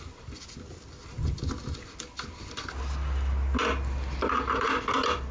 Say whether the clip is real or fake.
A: real